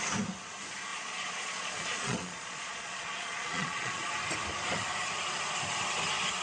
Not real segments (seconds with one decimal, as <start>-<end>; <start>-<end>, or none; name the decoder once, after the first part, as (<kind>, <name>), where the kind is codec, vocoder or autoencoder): 0.9-4.1 (vocoder, Vocos)